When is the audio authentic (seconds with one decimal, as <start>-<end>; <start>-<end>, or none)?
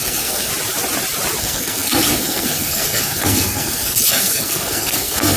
0.5-1.4